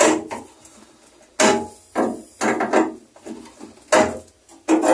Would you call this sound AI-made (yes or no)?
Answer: no